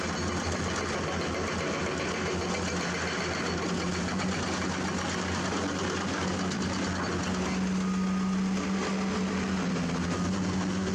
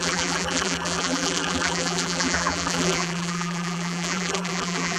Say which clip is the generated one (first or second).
second